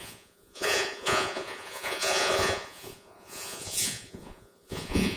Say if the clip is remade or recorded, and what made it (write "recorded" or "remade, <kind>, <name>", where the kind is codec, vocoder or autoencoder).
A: remade, vocoder, Vocos